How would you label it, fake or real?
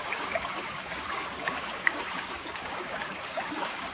fake